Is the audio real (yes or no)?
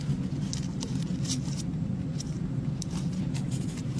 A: no